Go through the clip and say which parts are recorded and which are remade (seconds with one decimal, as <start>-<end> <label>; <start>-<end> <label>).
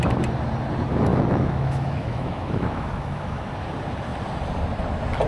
0.0-1.1 recorded; 1.1-3.5 remade; 3.5-5.3 recorded